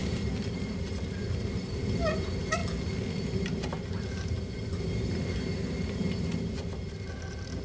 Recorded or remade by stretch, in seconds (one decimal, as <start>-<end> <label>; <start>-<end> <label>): 0.0-2.6 remade; 2.6-7.6 recorded